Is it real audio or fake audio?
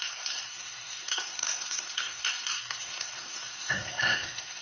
fake